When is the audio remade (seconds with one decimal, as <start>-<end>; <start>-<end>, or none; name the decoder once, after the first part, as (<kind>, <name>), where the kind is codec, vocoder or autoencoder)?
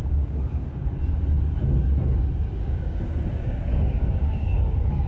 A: 0.0-0.9 (codec, DAC); 2.4-5.1